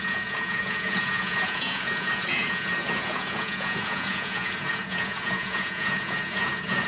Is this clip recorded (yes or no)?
no